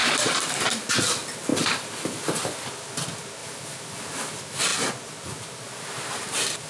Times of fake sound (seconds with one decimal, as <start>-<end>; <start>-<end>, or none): 1.5-2.7; 3.4-4.0